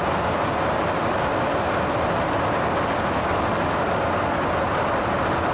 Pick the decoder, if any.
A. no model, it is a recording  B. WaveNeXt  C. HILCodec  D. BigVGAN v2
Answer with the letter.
A